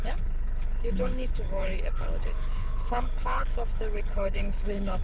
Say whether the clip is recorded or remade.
remade